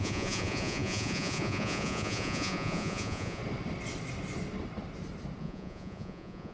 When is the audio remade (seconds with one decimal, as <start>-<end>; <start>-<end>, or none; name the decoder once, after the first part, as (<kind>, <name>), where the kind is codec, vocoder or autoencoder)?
0.0-3.4 (vocoder, Vocos); 5.4-6.5